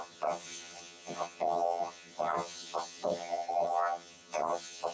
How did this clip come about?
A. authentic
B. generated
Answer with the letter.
B